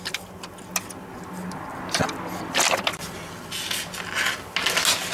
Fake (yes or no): no